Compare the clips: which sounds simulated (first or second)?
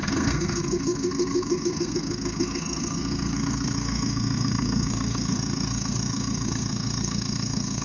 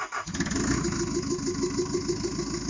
first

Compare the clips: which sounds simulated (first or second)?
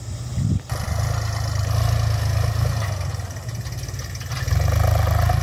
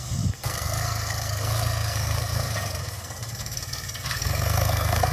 second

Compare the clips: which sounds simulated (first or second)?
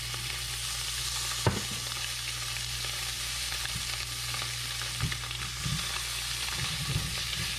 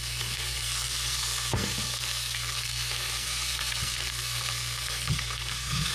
second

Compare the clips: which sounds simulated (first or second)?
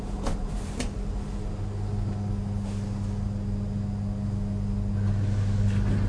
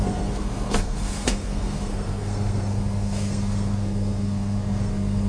second